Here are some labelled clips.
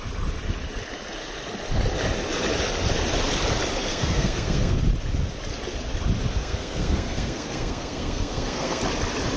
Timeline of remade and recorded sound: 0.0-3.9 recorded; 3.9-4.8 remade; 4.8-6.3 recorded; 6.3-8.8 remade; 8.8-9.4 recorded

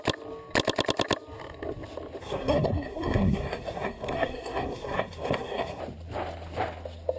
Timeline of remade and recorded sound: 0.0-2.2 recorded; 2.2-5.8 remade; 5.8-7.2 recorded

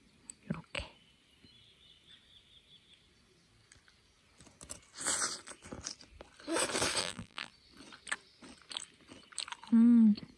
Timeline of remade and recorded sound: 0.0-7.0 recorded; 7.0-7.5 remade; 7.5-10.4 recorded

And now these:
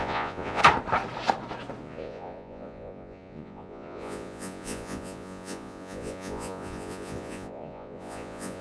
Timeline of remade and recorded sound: 0.0-0.6 remade; 0.6-1.8 recorded; 1.8-8.6 remade

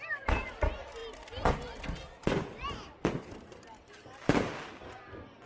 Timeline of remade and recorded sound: 0.0-5.5 recorded

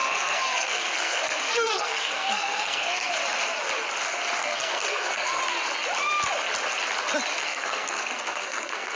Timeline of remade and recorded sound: 0.0-3.1 remade; 3.1-4.4 recorded; 4.4-5.4 remade; 5.4-7.4 recorded; 7.4-9.0 remade